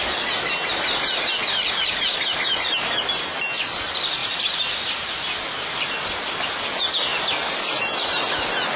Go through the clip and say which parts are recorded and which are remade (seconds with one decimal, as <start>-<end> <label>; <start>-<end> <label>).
0.0-1.4 recorded; 1.4-2.7 remade; 2.7-4.2 recorded; 4.2-5.8 remade; 5.8-8.8 recorded